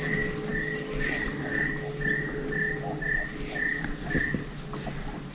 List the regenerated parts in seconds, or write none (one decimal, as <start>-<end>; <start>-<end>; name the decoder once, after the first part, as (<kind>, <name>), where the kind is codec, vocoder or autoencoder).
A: none